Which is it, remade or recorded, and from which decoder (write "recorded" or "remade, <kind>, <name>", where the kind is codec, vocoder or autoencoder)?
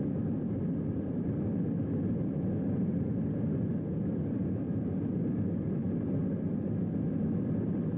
recorded